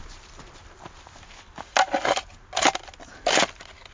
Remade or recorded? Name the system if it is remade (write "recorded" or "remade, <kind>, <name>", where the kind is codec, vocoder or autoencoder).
recorded